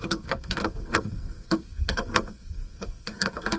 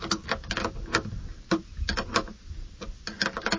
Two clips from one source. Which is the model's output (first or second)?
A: first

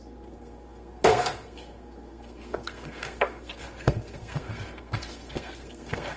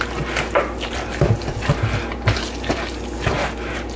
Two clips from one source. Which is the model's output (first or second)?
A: first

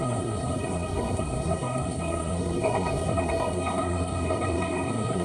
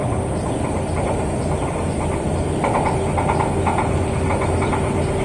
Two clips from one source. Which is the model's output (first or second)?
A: first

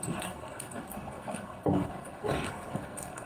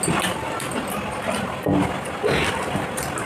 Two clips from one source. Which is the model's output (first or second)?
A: first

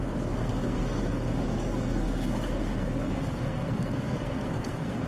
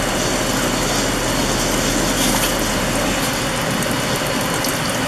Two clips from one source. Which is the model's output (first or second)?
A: first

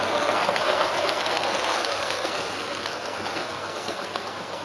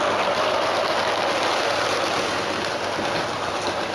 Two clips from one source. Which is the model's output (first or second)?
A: first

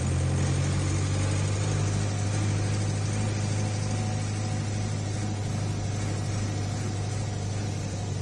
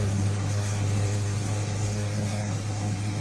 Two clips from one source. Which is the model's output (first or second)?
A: second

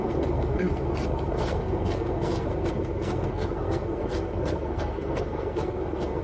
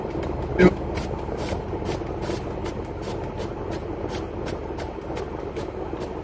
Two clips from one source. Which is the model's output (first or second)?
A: first